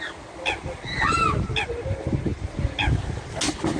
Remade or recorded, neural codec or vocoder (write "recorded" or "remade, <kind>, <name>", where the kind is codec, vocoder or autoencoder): recorded